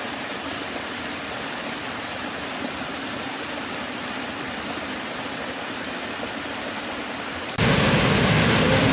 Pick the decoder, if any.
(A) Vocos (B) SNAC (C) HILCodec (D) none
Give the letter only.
D